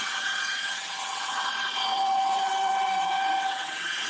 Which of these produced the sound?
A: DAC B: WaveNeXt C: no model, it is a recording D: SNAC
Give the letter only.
B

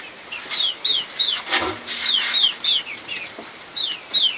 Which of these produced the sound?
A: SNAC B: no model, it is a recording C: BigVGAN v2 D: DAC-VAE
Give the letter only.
B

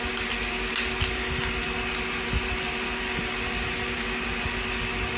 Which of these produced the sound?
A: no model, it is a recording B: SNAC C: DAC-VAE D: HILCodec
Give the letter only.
A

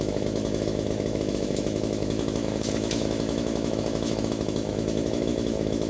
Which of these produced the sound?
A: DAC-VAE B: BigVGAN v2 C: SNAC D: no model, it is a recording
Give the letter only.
A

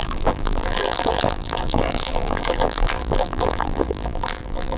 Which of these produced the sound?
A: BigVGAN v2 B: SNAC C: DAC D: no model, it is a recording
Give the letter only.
A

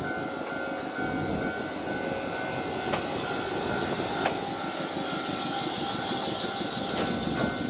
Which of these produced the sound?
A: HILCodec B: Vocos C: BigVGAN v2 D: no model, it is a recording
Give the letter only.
D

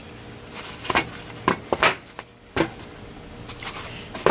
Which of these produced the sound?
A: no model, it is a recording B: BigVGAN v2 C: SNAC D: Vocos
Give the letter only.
A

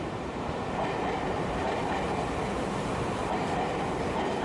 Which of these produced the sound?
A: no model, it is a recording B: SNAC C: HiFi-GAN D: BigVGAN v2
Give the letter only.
D